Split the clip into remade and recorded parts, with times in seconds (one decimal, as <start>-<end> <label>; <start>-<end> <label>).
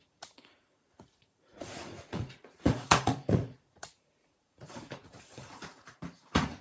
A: 0.0-6.6 remade